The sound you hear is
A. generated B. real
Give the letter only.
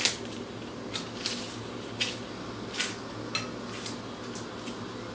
B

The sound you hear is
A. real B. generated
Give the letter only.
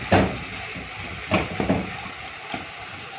A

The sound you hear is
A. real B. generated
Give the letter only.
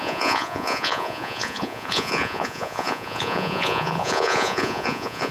B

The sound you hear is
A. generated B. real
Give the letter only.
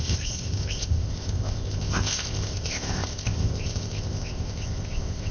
A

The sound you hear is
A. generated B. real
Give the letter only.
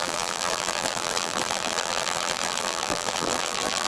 A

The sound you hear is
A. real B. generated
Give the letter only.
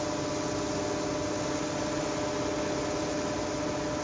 A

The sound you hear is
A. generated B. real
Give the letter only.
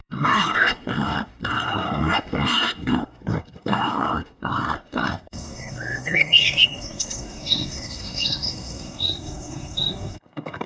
A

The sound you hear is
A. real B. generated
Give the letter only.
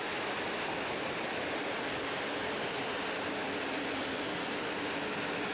A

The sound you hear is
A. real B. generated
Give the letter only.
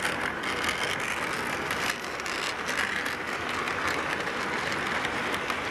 A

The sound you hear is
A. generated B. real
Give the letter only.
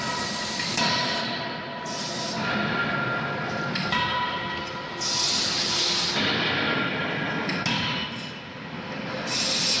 B